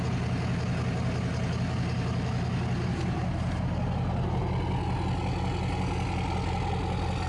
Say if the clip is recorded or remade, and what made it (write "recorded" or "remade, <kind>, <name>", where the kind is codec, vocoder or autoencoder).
recorded